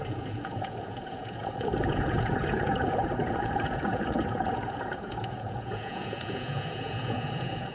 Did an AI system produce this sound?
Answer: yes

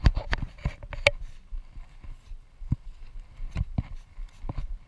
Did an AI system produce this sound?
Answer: no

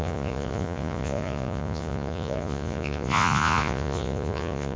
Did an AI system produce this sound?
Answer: yes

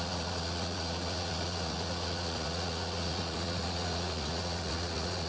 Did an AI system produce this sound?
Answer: yes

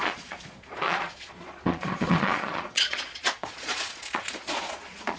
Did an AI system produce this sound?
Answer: yes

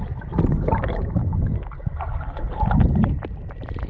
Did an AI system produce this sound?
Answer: no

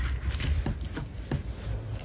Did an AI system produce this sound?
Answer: no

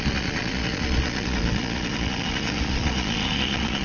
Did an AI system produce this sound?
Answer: yes